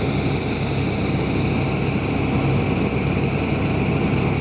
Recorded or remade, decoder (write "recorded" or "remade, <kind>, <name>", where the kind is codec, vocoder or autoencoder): recorded